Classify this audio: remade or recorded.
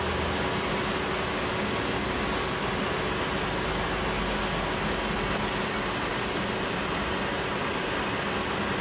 recorded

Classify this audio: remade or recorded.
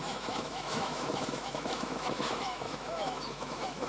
remade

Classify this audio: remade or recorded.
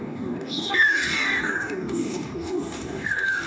remade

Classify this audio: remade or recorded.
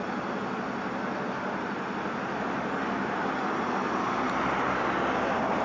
recorded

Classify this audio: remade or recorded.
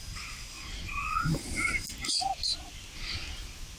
recorded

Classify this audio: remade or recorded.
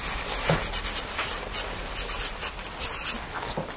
recorded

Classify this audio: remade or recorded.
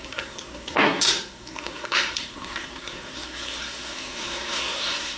remade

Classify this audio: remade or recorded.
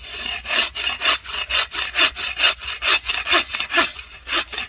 remade